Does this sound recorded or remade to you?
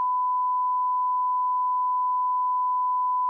recorded